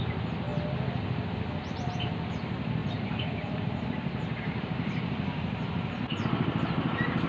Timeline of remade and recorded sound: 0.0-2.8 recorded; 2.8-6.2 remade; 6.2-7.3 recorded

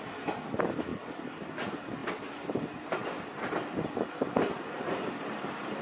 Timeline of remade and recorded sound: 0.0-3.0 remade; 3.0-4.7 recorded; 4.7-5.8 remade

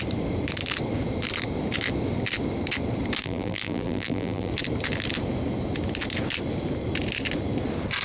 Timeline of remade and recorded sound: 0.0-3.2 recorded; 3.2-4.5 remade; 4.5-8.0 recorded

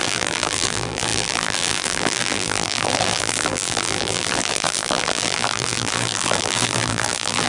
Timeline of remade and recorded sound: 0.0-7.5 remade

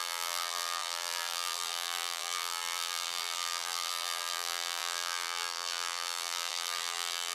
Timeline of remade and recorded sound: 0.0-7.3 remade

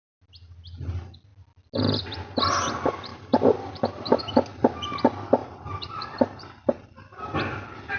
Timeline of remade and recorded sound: 0.0-3.1 recorded; 3.1-4.2 remade; 4.2-5.4 recorded; 5.4-6.5 remade; 6.5-8.0 recorded

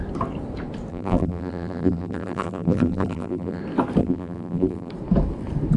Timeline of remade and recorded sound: 0.0-0.9 recorded; 0.9-3.6 remade; 3.6-4.0 recorded; 4.0-4.9 remade; 4.9-5.8 recorded

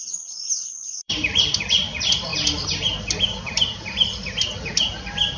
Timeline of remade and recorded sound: 0.0-0.5 recorded; 0.5-1.6 remade; 1.6-2.3 recorded; 2.3-5.4 remade